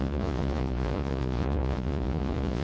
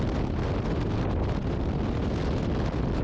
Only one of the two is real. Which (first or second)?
second